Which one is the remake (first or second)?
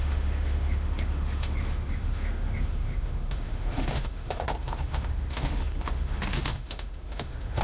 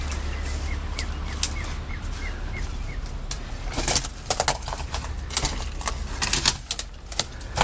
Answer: first